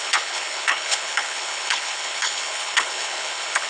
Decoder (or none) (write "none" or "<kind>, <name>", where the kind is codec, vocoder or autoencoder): codec, HILCodec